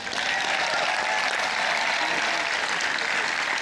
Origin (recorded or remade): recorded